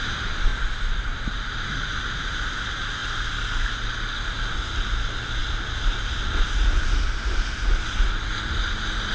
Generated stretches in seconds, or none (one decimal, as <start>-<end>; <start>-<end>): none